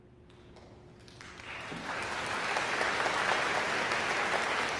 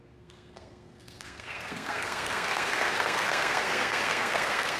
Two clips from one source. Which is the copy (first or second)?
second